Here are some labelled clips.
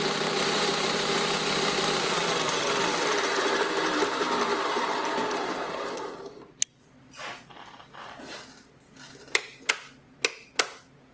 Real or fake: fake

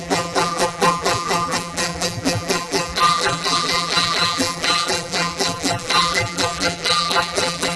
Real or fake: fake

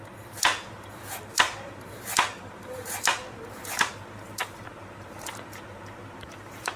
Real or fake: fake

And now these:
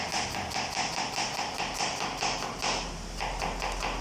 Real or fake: real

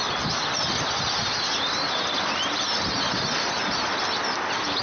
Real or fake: real